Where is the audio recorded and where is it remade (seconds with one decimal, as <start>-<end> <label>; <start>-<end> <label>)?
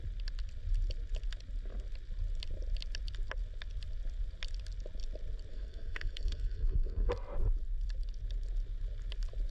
0.0-5.5 recorded; 5.5-7.1 remade; 7.1-9.5 recorded